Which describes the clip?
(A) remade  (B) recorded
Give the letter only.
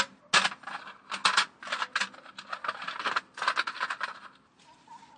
B